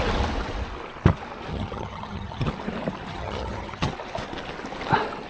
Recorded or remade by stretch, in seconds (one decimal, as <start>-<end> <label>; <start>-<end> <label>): 0.0-1.5 recorded; 1.5-2.5 remade; 2.5-3.1 recorded; 3.1-3.9 remade; 3.9-5.3 recorded